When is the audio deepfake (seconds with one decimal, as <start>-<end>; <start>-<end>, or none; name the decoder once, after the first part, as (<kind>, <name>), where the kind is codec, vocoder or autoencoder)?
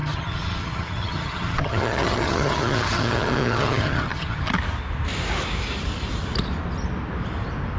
0.0-4.5 (vocoder, HiFi-GAN)